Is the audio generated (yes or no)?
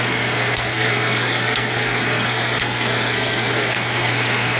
yes